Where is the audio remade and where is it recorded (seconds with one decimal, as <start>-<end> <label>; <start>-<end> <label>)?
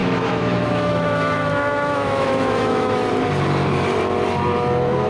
0.0-3.1 remade; 3.1-5.1 recorded